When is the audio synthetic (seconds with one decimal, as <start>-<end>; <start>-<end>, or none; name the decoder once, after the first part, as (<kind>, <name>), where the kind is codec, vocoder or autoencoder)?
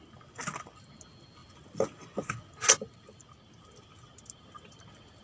none